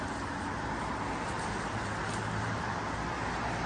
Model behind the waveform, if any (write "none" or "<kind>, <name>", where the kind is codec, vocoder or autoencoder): none